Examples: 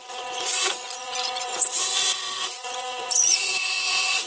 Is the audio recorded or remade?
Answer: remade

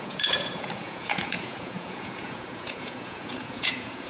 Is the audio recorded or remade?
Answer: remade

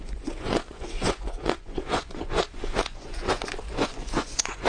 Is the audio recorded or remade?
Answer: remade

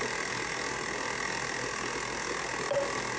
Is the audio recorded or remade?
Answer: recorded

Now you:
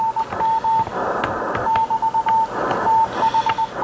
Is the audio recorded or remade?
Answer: recorded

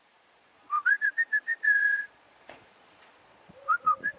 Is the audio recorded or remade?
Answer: remade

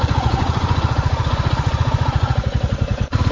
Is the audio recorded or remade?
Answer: remade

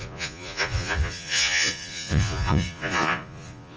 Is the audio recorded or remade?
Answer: remade